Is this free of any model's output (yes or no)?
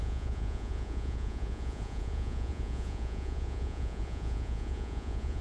no